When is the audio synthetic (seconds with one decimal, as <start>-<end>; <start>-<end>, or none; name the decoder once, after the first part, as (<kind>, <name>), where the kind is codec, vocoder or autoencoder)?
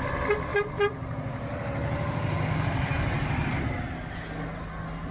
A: 0.5-3.6 (vocoder, BigVGAN v2)